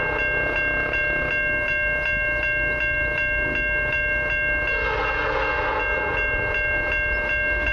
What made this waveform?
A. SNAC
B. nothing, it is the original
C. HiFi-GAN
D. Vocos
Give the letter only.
B